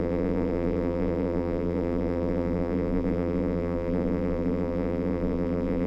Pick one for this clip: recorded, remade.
remade